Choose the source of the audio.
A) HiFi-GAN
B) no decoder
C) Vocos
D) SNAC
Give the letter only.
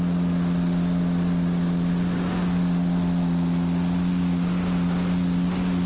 B